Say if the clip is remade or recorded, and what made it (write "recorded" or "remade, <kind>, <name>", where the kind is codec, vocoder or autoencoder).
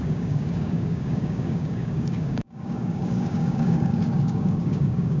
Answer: remade, codec, DAC